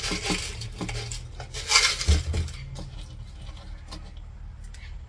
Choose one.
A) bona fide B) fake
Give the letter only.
A